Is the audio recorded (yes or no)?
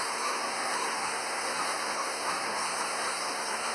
no